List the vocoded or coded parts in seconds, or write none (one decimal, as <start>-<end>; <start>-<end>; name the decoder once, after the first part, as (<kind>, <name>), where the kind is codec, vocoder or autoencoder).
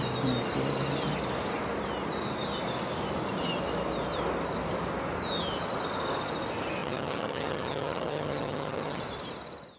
6.8-9.0 (vocoder, HiFi-GAN)